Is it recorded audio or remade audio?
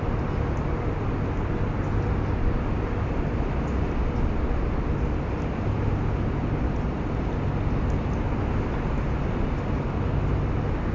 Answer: recorded